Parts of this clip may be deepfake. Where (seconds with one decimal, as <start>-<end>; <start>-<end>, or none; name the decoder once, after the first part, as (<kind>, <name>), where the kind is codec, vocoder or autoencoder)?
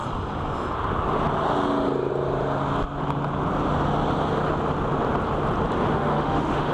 5.9-6.7 (autoencoder, DAC-VAE)